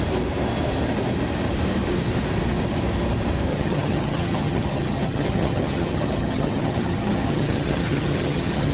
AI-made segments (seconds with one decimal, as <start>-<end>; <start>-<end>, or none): 3.5-8.7